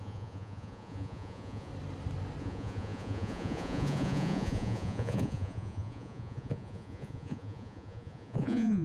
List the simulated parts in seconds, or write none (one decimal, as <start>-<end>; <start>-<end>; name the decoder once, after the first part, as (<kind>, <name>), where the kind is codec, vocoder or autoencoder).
0.0-1.7 (vocoder, Vocos); 2.4-8.8

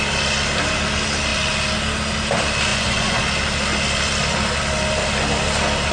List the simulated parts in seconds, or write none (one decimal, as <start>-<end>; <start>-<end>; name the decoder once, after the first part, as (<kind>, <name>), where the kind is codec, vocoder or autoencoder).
2.7-3.2 (vocoder, Vocos)

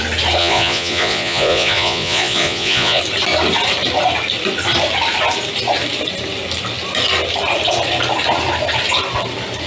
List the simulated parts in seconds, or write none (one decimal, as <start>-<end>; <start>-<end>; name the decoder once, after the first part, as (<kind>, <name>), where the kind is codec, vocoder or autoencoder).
0.4-3.0 (vocoder, Vocos)

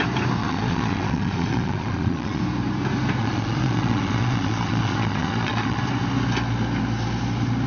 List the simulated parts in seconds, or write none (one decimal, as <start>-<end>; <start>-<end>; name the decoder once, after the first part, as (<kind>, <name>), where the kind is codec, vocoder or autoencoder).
0.4-2.4 (vocoder, Vocos); 3.2-5.8